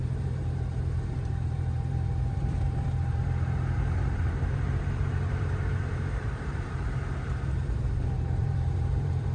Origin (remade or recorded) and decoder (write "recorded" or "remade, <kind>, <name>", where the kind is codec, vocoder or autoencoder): remade, vocoder, BigVGAN v2